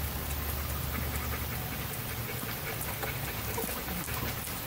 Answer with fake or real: real